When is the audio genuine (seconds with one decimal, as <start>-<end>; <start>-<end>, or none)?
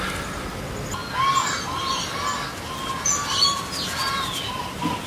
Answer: 0.0-5.1